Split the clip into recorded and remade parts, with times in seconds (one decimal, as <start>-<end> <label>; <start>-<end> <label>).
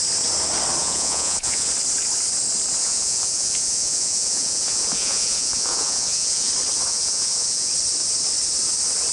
0.0-0.8 recorded; 0.8-1.7 remade; 1.7-2.8 recorded; 2.8-6.5 remade; 6.5-6.9 recorded; 6.9-7.7 remade; 7.7-9.1 recorded